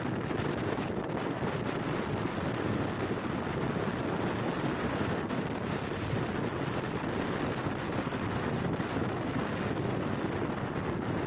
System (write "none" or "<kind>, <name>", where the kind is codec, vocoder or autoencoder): none